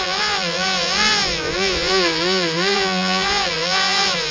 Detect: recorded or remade remade